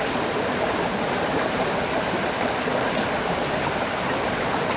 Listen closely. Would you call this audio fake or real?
real